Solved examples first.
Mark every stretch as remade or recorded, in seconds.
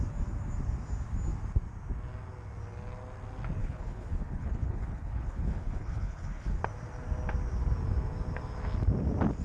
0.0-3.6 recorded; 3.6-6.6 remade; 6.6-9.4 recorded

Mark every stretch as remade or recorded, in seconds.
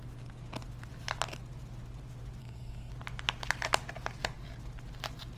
0.0-2.4 recorded; 2.4-2.9 remade; 2.9-5.4 recorded